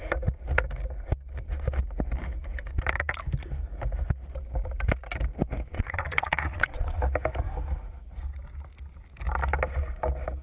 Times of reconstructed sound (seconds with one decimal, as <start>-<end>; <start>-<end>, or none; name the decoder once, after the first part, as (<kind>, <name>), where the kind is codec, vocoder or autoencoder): 5.7-7.0 (vocoder, Vocos)

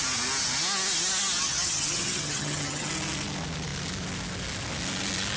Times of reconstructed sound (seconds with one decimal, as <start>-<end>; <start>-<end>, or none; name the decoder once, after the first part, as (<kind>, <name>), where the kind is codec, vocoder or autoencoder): 1.4-2.9 (vocoder, HiFi-GAN)